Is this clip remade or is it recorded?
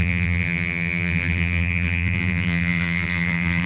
remade